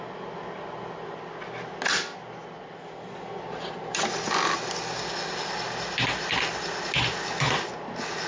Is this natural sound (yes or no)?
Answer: yes